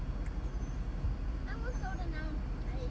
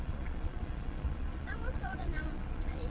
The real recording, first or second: first